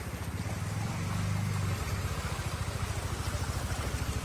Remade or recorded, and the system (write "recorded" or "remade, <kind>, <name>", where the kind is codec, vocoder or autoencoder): recorded